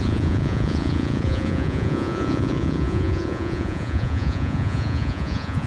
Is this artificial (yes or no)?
yes